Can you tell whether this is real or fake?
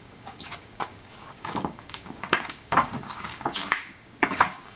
fake